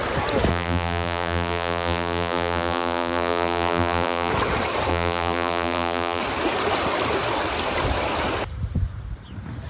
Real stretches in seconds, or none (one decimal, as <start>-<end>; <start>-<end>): 0.0-0.5; 4.3-4.9; 6.2-9.7